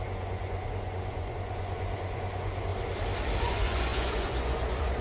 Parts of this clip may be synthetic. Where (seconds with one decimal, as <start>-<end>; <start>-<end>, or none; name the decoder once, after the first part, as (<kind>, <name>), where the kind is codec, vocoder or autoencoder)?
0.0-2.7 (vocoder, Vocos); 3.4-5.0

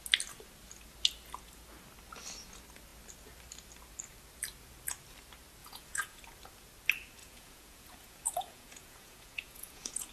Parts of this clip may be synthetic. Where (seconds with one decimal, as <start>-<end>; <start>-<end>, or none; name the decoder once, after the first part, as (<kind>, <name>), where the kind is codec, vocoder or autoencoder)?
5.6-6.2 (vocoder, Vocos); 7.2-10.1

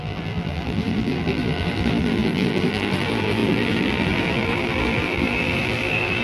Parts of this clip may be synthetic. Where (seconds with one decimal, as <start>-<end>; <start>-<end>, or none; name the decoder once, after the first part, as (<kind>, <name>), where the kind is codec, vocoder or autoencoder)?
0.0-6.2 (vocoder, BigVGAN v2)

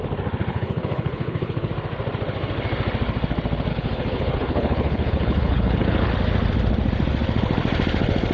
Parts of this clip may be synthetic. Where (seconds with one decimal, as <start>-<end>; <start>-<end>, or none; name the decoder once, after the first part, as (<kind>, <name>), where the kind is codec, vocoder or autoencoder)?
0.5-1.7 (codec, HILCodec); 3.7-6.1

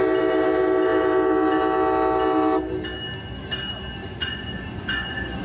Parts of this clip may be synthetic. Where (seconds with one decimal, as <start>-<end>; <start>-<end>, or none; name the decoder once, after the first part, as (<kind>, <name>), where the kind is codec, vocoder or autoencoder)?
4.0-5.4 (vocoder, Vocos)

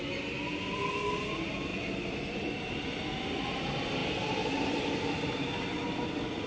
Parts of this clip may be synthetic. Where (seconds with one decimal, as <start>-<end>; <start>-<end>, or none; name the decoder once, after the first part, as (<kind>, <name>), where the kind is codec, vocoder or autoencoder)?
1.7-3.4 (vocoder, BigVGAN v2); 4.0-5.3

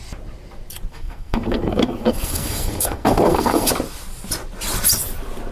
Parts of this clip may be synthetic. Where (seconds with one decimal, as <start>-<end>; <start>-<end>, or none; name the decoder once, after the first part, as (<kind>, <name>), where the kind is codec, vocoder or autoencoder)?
0.9-3.7 (codec, SNAC)